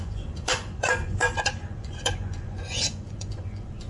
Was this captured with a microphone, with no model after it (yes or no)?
no